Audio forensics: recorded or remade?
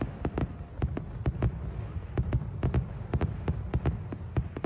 recorded